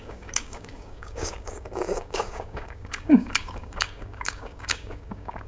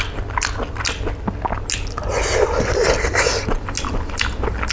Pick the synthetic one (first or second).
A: first